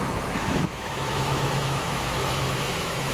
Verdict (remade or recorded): remade